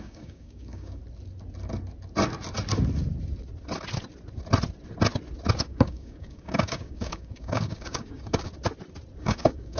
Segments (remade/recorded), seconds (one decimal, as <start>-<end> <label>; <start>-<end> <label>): 0.0-1.0 remade; 1.0-5.6 recorded; 5.6-8.5 remade; 8.5-9.2 recorded; 9.2-9.8 remade

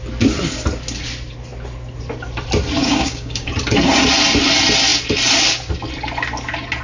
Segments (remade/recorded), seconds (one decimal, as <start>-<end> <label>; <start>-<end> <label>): 0.0-2.8 recorded; 2.8-3.5 remade; 3.5-6.8 recorded

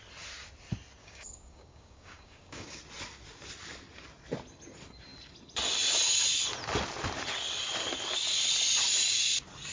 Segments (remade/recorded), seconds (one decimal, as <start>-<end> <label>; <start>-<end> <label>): 0.0-1.0 recorded; 1.0-2.8 remade; 2.8-9.7 recorded

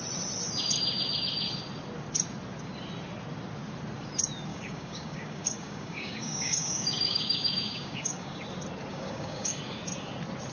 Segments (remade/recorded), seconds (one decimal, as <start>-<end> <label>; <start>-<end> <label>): 0.0-4.5 recorded; 4.5-8.4 remade; 8.4-8.9 recorded; 8.9-9.6 remade; 9.6-10.5 recorded

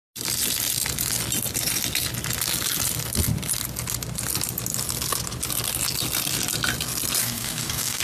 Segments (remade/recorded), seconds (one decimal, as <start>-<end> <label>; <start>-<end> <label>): 0.0-7.2 recorded; 7.2-8.0 remade

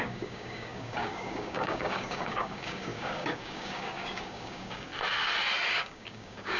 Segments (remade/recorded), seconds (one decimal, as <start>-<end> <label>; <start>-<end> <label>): 0.0-4.9 remade; 4.9-5.7 recorded; 5.7-6.6 remade

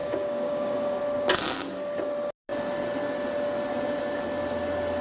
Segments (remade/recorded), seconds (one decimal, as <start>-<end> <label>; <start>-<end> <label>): 0.0-1.0 remade; 1.0-5.0 recorded